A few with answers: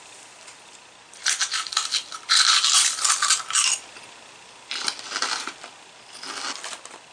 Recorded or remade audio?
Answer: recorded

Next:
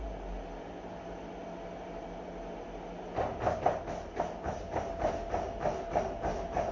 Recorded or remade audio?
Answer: recorded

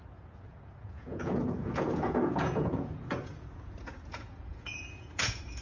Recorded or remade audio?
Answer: remade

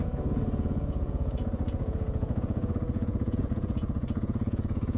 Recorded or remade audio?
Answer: remade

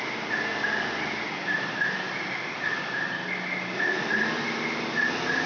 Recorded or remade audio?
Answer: recorded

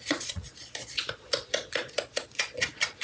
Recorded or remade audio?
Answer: remade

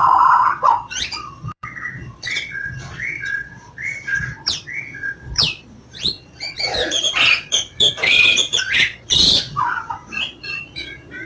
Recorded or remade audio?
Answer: remade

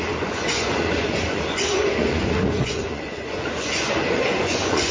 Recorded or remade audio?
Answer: remade